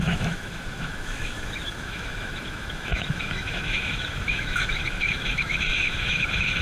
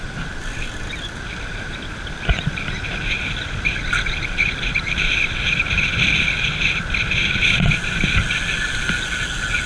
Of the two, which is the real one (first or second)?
second